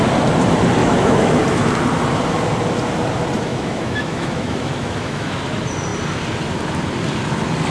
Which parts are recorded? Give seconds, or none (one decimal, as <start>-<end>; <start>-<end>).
0.0-0.8; 1.4-3.5; 5.4-7.7